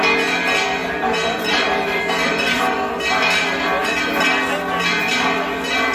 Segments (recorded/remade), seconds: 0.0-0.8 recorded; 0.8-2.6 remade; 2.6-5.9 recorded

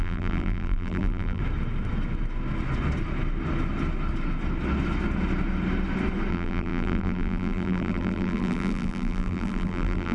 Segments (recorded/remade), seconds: 0.0-1.4 remade; 1.4-6.3 recorded; 6.3-10.1 remade

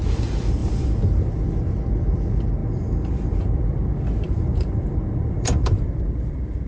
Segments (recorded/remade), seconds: 0.0-0.6 recorded; 0.6-1.3 remade; 1.3-2.6 recorded; 2.6-6.7 remade

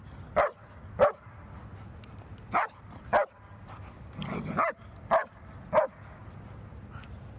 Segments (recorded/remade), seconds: 0.0-7.4 recorded

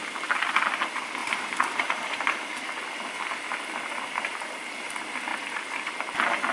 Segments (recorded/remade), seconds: 0.0-1.2 recorded; 1.2-2.3 remade; 2.3-5.3 recorded; 5.3-6.0 remade; 6.0-6.5 recorded

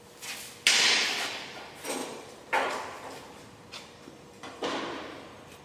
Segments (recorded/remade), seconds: 0.0-2.0 recorded; 2.0-4.8 remade; 4.8-5.6 recorded

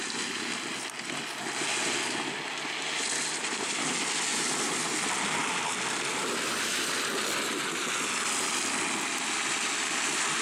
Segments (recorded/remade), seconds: 0.0-5.4 recorded; 5.4-6.7 remade; 6.7-10.4 recorded

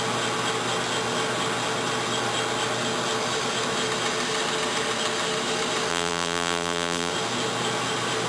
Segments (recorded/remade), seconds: 0.0-5.9 recorded; 5.9-7.1 remade; 7.1-8.3 recorded